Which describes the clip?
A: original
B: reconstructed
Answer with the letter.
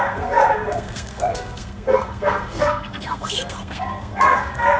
B